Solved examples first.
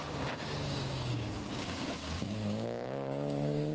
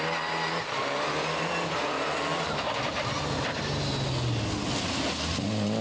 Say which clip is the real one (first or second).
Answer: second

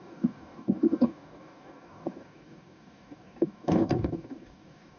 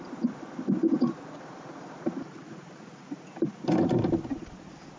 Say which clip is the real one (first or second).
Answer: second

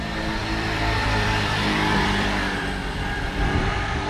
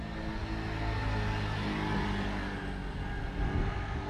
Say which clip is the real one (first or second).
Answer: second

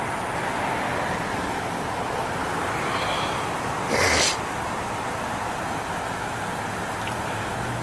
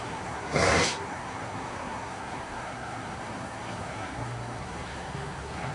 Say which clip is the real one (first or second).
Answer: first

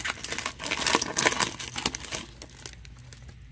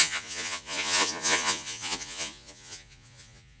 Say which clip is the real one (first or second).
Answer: first